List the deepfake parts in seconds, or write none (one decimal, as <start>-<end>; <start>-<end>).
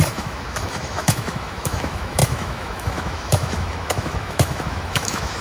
0.0-5.4